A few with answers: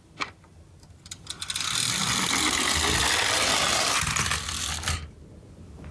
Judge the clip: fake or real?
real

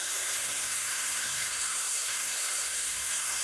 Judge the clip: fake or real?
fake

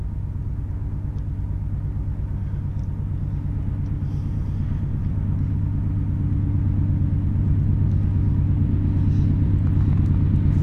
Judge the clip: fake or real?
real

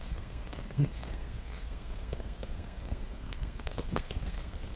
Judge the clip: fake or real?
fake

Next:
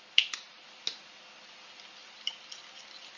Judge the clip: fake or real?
real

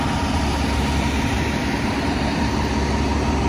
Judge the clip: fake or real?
real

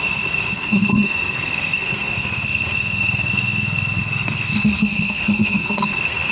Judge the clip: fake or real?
fake